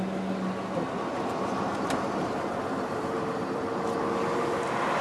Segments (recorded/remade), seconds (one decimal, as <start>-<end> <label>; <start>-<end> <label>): 0.0-1.7 recorded; 1.7-5.0 remade